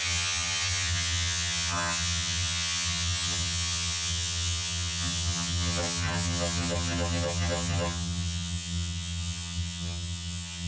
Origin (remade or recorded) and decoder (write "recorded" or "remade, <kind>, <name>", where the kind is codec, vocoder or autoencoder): remade, vocoder, HiFi-GAN